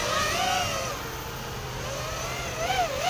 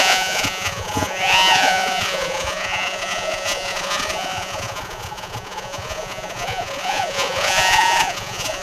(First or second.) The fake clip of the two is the second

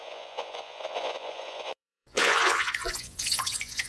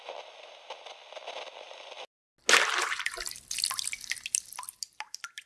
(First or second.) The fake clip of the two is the first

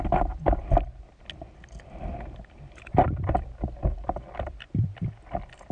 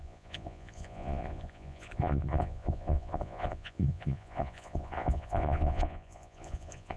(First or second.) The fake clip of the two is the second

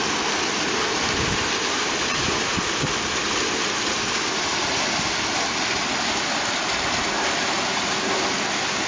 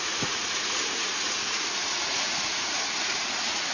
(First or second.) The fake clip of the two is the second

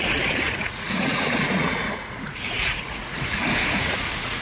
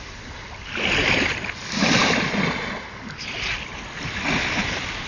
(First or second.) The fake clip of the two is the first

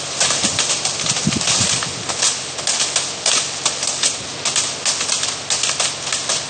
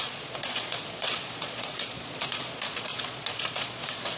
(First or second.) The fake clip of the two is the second